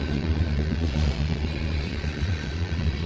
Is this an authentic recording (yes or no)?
no